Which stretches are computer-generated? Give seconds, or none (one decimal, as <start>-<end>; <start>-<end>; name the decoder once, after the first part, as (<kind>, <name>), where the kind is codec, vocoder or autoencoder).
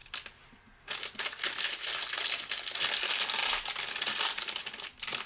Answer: none